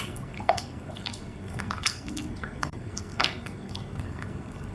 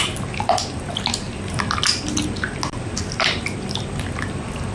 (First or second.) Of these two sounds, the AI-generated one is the first